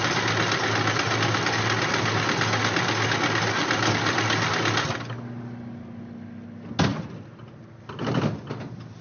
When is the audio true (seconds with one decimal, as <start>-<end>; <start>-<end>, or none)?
0.0-9.0